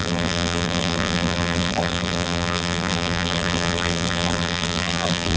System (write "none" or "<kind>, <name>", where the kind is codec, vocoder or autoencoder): vocoder, BigVGAN v2